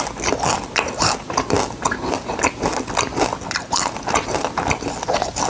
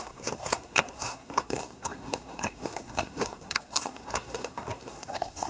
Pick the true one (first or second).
first